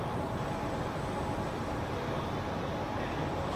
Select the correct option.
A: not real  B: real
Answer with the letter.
B